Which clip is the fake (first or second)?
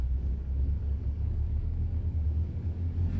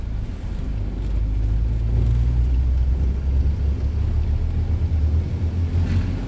first